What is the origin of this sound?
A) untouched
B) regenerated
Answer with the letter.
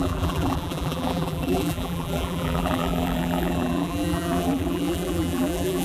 B